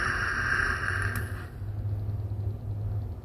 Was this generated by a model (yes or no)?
no